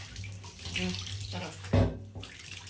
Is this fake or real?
real